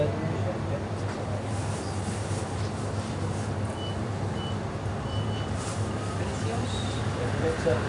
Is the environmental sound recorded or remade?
recorded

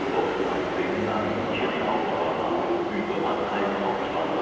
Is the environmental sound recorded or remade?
recorded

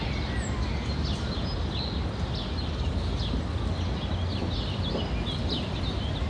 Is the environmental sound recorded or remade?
recorded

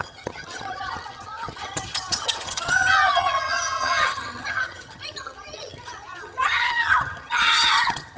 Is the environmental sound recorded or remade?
remade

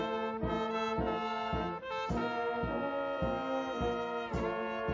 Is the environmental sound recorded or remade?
recorded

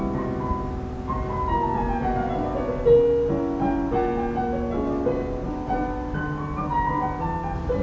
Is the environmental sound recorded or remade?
recorded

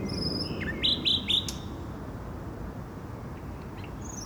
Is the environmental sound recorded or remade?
recorded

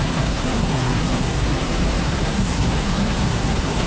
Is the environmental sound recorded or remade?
remade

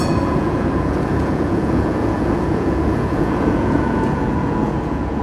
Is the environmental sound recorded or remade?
remade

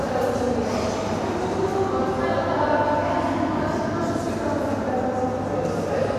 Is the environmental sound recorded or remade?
recorded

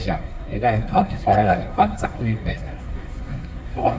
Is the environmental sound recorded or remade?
remade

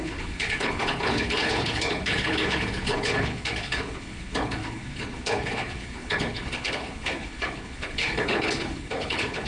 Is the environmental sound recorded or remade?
remade